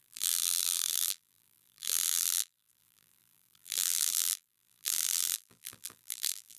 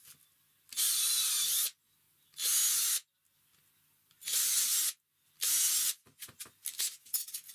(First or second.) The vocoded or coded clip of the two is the first